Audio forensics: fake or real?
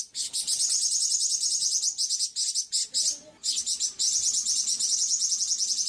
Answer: real